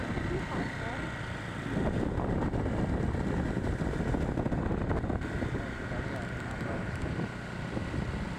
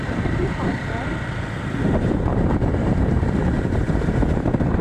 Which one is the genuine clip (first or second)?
first